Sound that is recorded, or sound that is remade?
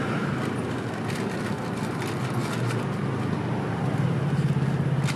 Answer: recorded